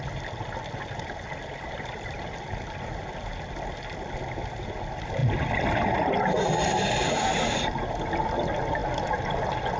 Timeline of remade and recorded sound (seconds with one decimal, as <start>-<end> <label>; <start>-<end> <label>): 0.0-9.8 recorded